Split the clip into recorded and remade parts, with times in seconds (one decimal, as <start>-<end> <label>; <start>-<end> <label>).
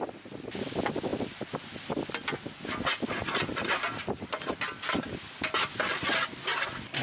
0.0-7.0 recorded